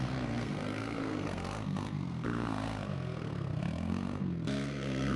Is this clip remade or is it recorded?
remade